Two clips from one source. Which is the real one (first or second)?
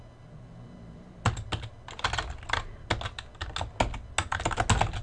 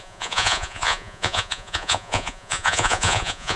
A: first